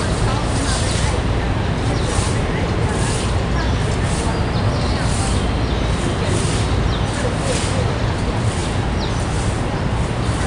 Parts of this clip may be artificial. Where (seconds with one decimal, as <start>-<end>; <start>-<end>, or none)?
none